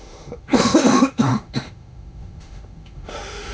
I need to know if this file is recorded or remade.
remade